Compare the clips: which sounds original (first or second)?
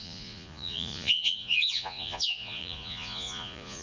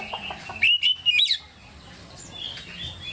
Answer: second